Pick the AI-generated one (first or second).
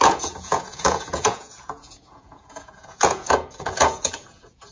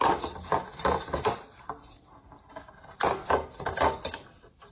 first